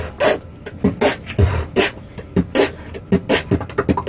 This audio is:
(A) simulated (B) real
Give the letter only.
B